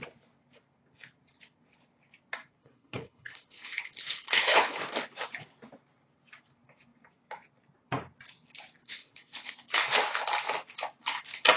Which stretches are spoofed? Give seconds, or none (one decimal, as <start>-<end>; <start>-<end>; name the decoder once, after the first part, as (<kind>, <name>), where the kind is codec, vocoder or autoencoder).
2.6-4.8 (codec, HILCodec); 8.8-9.5